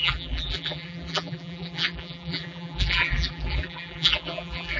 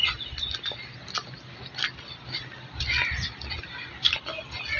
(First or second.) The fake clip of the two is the first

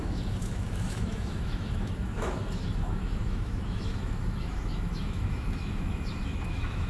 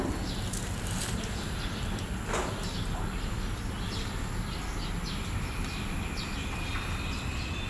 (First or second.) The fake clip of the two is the first